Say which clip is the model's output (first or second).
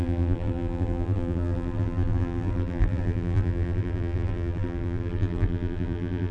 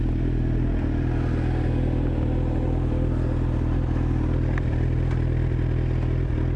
first